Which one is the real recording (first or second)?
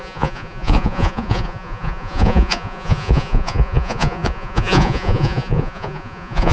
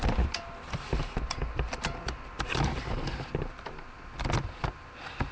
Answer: second